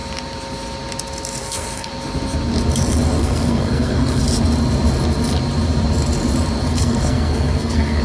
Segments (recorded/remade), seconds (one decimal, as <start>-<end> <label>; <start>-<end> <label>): 0.0-1.4 recorded; 1.4-1.9 remade; 1.9-3.2 recorded; 3.2-4.2 remade; 4.2-6.7 recorded; 6.7-8.0 remade